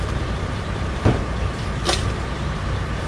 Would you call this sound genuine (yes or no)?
no